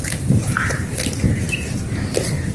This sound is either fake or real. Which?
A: fake